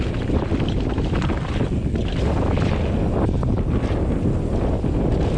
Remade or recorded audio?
recorded